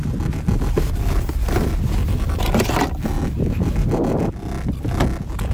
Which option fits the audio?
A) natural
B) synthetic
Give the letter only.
A